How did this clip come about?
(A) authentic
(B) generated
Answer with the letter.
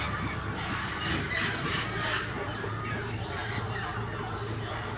A